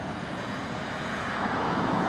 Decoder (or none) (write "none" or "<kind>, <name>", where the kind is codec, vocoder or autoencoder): vocoder, Vocos